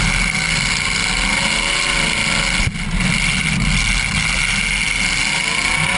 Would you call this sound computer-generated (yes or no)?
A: no